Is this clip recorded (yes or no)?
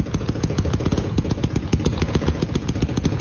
no